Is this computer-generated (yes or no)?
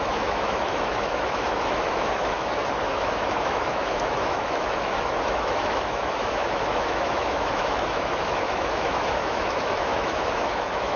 yes